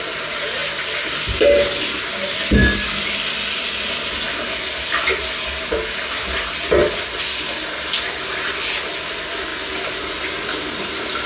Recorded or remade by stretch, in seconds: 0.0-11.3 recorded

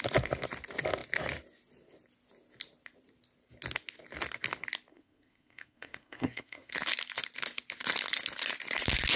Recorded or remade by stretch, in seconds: 0.0-4.9 recorded; 4.9-6.7 remade; 6.7-9.2 recorded

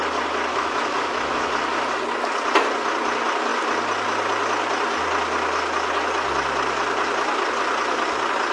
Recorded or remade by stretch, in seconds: 0.0-0.5 recorded; 0.5-1.5 remade; 1.5-8.5 recorded

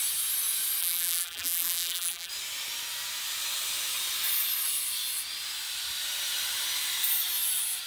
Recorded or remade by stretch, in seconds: 0.0-0.8 recorded; 0.8-2.3 remade; 2.3-7.9 recorded

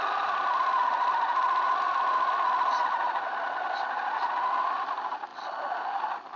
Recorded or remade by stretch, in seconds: 0.0-6.4 recorded